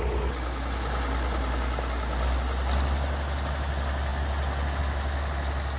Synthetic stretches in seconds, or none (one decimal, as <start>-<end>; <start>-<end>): none